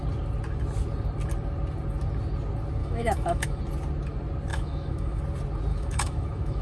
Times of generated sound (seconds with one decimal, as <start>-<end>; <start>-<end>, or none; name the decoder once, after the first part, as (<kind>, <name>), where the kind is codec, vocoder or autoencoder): 2.8-3.6 (autoencoder, DAC-VAE); 4.5-5.2; 5.7-6.6